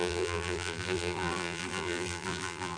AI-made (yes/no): yes